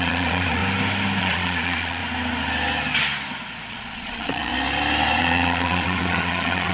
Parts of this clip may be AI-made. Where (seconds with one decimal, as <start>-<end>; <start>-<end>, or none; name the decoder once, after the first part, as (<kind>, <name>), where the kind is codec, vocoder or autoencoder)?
0.0-0.6 (vocoder, Vocos); 1.2-2.0; 3.7-4.5; 5.2-6.7